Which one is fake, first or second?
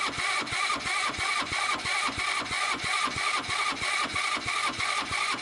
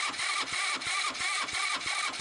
first